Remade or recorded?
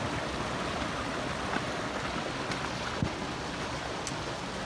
recorded